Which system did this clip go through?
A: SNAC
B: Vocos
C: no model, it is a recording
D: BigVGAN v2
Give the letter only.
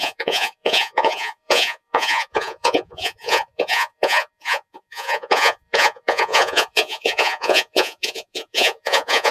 B